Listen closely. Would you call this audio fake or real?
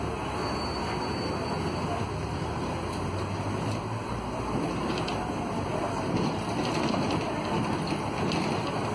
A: real